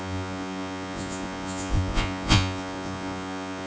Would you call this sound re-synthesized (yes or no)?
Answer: yes